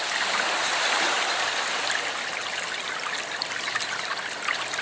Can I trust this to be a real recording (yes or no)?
yes